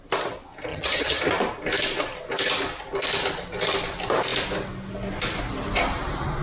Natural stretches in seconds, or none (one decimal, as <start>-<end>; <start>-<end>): 0.0-0.7; 1.2-6.4